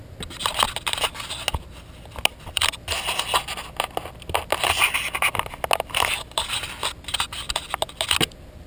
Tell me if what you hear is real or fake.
real